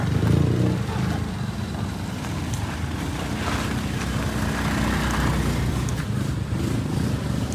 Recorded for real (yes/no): yes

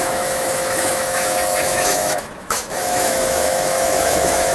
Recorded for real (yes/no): no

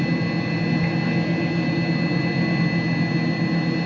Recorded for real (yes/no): yes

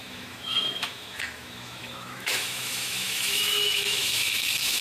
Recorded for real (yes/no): no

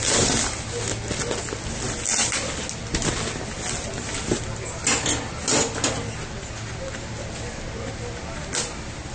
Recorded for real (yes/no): yes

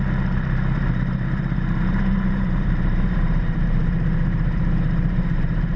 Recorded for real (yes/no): no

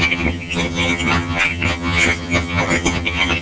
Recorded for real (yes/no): no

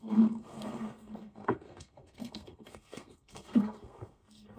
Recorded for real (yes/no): no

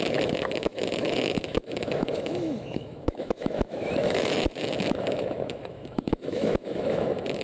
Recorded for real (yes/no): no